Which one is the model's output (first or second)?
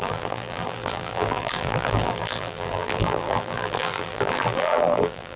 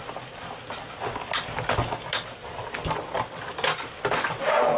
first